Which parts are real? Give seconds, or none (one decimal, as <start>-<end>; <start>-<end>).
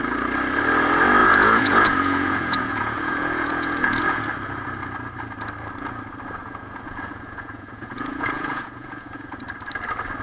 0.0-1.2; 4.2-6.4; 9.4-10.2